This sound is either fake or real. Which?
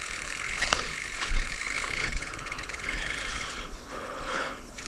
fake